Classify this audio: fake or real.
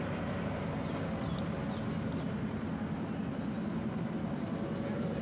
real